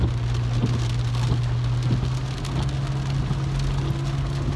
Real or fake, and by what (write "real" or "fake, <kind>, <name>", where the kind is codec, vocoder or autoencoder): real